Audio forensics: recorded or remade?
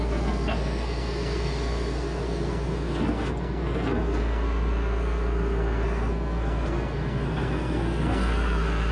remade